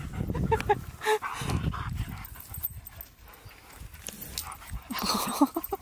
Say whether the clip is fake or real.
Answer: real